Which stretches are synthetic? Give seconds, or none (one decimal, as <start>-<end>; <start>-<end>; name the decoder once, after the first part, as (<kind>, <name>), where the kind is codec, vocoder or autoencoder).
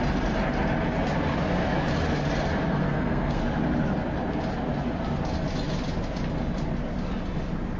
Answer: 2.7-3.4 (codec, SNAC)